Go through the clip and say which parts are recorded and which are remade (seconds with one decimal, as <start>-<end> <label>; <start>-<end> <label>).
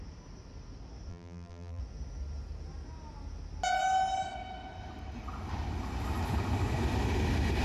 0.0-1.1 recorded; 1.1-1.8 remade; 1.8-7.6 recorded